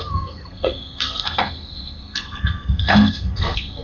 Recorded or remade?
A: remade